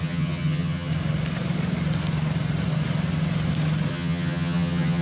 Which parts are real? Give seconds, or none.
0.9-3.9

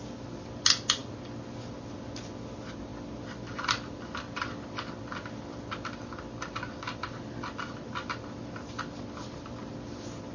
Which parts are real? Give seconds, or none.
0.0-10.3

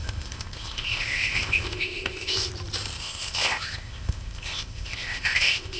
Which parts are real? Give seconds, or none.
2.5-3.0

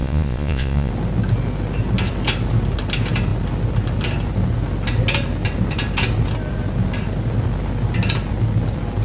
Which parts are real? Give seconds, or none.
0.9-9.0

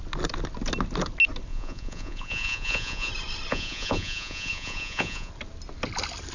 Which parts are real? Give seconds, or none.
0.0-1.5; 3.1-3.5; 5.3-6.3

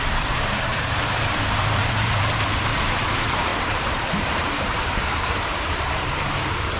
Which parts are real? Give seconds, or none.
none

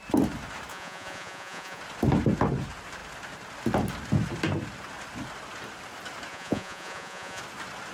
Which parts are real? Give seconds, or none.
0.0-0.7; 1.8-6.3; 7.4-7.9

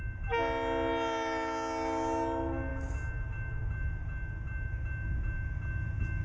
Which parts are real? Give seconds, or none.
0.0-6.2